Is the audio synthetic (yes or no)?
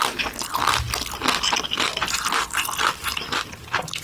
no